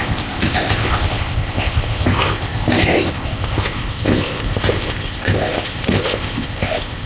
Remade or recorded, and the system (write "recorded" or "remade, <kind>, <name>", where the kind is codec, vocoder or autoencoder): remade, codec, ZipCodec